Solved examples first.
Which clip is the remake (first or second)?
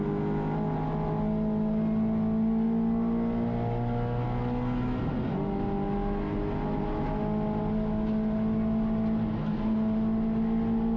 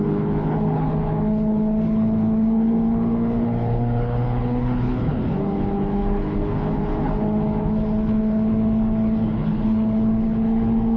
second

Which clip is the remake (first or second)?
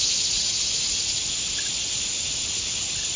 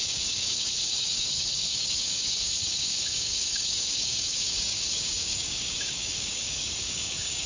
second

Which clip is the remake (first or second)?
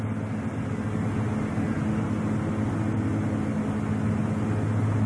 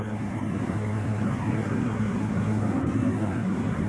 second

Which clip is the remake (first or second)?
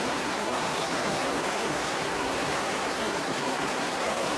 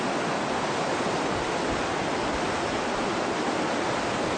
first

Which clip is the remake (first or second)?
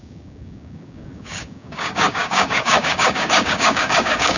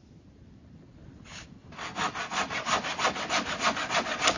first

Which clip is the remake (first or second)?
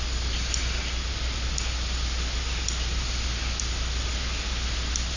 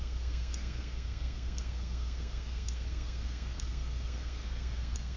second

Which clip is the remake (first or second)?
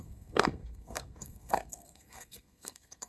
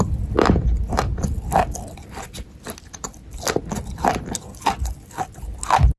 first